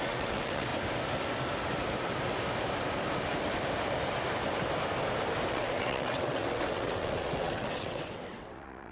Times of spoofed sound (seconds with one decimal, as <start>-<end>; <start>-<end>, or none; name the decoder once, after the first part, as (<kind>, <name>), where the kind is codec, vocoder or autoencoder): 0.0-0.7 (vocoder, WaveNeXt); 5.5-8.9